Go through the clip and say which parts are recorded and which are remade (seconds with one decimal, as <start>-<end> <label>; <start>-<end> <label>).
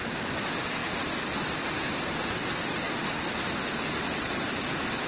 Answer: 0.0-5.1 recorded